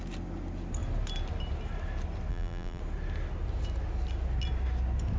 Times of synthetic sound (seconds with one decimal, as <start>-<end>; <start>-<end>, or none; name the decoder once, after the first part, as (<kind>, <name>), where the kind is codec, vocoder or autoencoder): 2.3-2.8 (vocoder, BigVGAN v2)